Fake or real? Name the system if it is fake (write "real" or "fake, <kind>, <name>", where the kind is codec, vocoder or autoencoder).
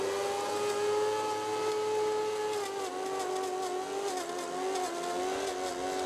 real